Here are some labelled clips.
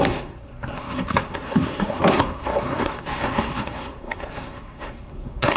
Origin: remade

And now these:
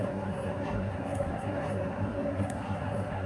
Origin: remade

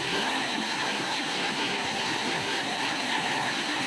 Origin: remade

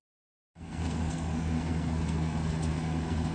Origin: remade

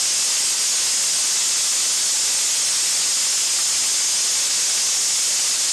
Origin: recorded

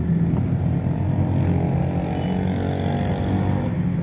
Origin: recorded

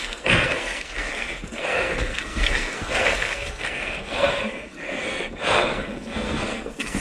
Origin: remade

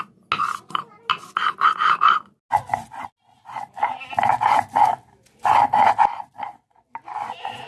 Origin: recorded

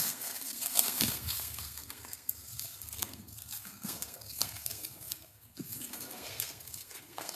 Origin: remade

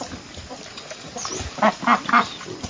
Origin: recorded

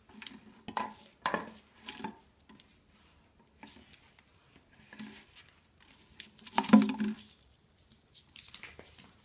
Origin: recorded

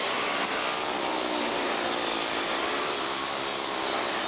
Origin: recorded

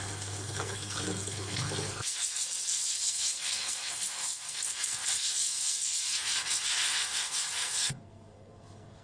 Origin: remade